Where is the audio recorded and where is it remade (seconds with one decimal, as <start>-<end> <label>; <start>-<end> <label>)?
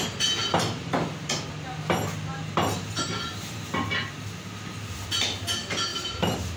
0.0-2.3 recorded; 2.3-3.9 remade; 3.9-5.9 recorded; 5.9-6.6 remade